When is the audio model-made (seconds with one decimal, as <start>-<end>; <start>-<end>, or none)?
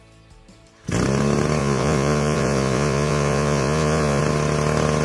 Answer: 1.6-4.2